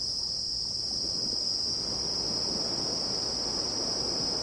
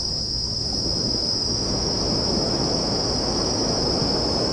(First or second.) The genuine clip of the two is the first